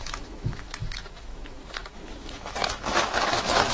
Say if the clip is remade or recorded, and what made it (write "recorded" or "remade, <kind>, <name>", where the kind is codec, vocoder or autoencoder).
remade, autoencoder, DAC-VAE